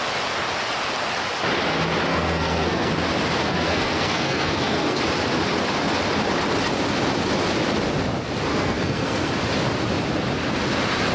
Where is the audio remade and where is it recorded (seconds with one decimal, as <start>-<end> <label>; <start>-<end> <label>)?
0.0-2.1 recorded; 2.1-2.9 remade; 2.9-3.4 recorded; 3.4-5.0 remade; 5.0-8.5 recorded; 8.5-9.3 remade; 9.3-11.1 recorded